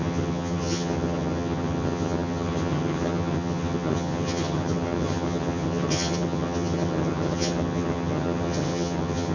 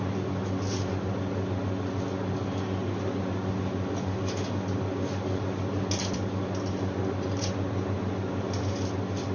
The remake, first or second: first